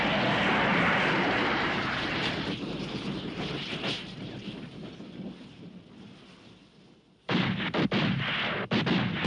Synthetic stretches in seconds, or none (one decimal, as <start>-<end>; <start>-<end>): 0.7-4.8